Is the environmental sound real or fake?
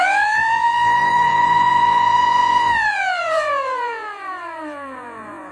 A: fake